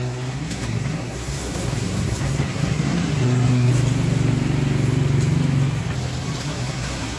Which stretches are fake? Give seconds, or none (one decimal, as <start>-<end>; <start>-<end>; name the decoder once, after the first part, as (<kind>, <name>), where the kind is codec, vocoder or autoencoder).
0.0-3.7 (codec, SNAC); 6.4-7.2